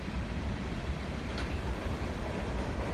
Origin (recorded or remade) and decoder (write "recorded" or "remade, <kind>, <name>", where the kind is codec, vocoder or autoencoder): remade, vocoder, BigVGAN v2